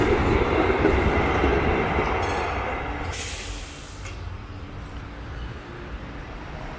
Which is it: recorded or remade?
recorded